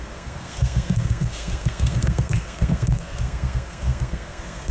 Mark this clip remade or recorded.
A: remade